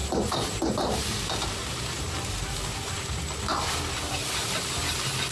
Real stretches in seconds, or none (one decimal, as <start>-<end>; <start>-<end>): 3.2-5.3